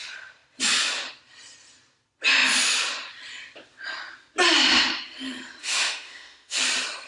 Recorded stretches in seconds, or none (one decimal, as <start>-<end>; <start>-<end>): 0.0-5.6; 6.6-7.1